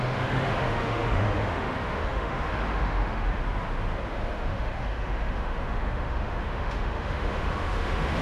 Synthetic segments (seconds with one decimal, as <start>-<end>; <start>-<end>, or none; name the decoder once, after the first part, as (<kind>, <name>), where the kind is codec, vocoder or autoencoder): 0.0-3.4 (autoencoder, DAC-VAE); 4.1-8.2